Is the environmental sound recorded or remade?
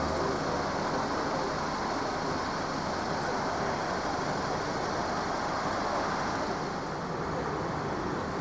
recorded